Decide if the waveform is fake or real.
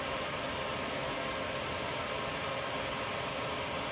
real